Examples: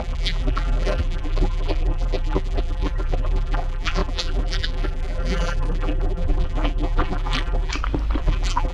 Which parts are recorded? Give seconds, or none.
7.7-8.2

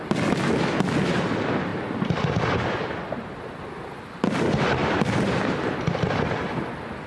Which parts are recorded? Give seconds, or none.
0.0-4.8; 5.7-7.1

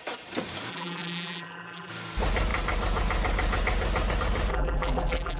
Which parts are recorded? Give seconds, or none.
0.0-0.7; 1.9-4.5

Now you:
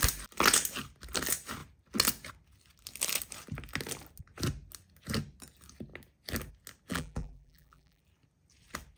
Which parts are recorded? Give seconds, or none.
0.0-6.9; 8.0-9.0